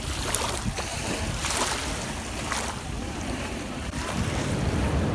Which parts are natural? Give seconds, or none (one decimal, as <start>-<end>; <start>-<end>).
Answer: 0.9-3.0